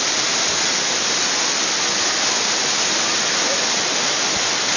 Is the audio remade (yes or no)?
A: no